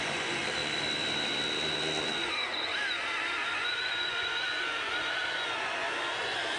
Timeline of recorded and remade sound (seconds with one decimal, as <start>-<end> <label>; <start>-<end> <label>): 0.0-0.4 remade; 0.4-2.1 recorded; 2.1-2.7 remade; 2.7-3.4 recorded; 3.4-6.6 remade